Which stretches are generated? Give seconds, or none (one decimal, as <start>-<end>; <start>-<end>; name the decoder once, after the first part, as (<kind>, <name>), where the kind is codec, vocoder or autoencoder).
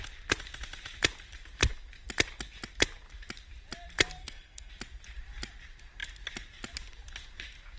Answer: 4.2-4.7 (codec, SNAC)